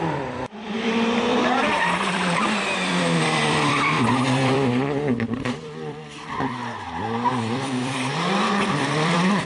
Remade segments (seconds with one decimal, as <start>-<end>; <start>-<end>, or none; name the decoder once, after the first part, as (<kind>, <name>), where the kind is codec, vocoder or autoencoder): 0.0-6.6 (vocoder, BigVGAN v2); 7.3-9.5